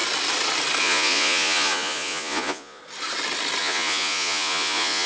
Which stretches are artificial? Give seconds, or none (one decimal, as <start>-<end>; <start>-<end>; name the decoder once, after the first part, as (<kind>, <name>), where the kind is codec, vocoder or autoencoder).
0.8-2.8 (vocoder, Vocos); 3.6-5.1